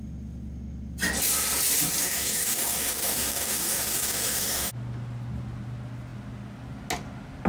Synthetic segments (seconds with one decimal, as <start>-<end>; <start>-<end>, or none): 2.0-4.7